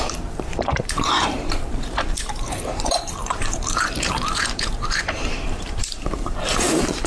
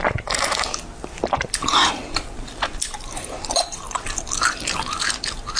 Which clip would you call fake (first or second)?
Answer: first